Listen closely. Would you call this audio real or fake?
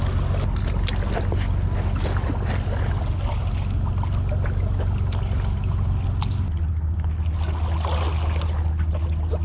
real